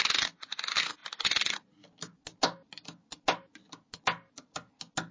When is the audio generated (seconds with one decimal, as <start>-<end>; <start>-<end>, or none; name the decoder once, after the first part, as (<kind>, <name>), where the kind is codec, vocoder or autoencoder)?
none